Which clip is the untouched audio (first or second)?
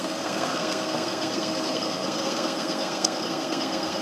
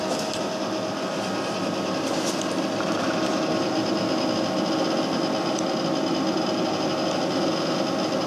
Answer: second